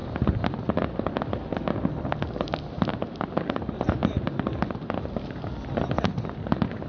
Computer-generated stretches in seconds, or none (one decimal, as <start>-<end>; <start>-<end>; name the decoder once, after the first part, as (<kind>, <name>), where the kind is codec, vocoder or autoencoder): none